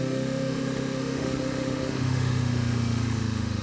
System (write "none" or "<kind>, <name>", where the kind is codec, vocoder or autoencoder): autoencoder, DAC-VAE